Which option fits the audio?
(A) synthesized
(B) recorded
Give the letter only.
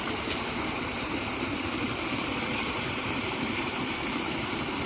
A